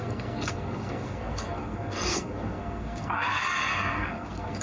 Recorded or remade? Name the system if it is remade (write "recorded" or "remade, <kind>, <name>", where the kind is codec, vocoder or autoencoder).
remade, codec, SNAC